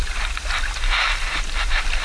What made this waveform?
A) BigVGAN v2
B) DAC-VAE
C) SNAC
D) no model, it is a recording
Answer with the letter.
D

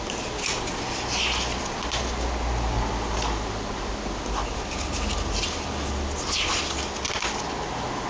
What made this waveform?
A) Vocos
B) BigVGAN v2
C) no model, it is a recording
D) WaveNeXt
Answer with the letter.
C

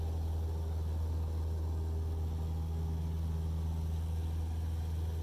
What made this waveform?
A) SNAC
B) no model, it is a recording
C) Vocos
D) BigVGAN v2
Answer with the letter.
B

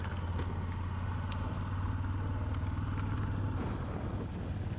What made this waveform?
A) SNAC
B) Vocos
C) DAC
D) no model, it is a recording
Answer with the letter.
D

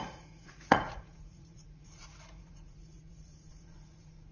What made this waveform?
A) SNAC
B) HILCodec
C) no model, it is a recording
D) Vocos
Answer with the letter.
D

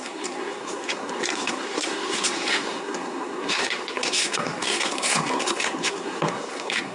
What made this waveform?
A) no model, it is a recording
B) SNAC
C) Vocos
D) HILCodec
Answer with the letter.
B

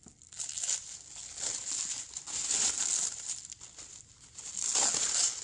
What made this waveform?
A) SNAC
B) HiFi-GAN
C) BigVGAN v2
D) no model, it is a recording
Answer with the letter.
D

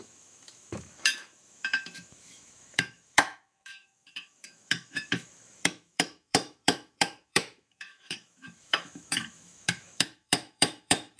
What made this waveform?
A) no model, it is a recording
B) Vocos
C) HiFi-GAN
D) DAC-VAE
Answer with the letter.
D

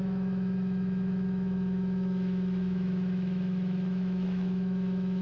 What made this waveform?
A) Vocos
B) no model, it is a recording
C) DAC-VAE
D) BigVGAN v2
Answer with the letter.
C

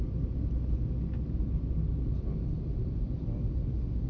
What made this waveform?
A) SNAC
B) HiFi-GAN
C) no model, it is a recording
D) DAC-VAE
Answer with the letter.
C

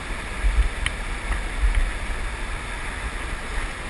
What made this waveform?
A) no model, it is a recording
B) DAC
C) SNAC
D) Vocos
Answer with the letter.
A